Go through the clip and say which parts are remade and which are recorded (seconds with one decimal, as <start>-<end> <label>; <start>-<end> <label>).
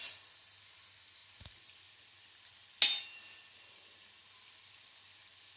0.0-5.6 recorded